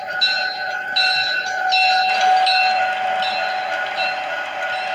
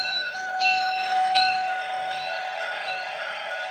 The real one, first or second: first